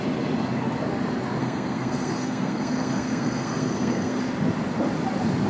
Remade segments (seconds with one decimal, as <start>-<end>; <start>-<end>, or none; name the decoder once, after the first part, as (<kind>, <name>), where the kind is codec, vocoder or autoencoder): 1.4-4.2 (codec, SNAC)